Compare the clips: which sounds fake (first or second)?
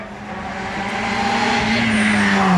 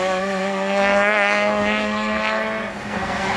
second